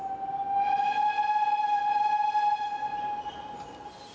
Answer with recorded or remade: recorded